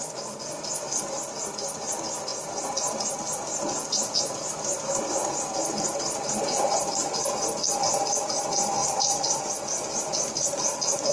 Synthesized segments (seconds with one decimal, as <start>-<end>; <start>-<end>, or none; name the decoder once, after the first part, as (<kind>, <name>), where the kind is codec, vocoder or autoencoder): 8.8-9.5 (vocoder, BigVGAN v2)